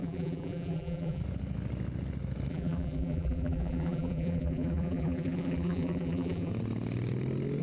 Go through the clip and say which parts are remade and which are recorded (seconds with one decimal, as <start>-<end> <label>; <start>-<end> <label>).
0.0-1.2 remade; 1.2-2.5 recorded; 2.5-6.5 remade; 6.5-7.6 recorded